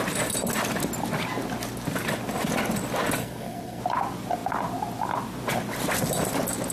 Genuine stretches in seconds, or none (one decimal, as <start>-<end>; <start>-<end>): 0.0-3.2; 3.8-6.7